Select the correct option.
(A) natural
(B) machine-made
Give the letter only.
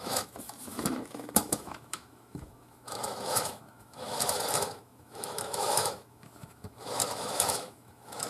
B